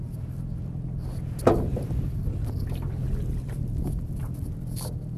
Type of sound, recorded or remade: recorded